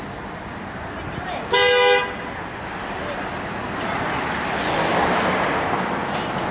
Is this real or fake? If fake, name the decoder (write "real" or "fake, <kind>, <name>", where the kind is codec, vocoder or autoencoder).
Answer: real